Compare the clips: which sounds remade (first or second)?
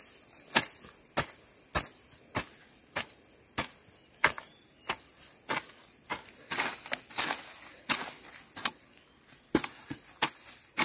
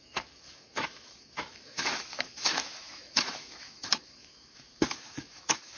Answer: second